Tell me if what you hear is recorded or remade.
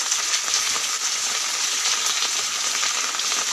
recorded